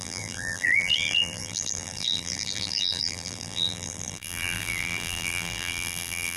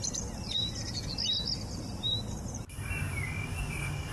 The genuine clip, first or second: second